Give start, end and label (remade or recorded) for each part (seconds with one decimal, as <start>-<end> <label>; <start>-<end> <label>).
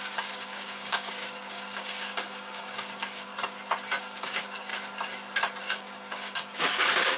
0.0-3.3 remade; 3.3-4.0 recorded; 4.0-4.7 remade; 4.7-5.6 recorded; 5.6-7.2 remade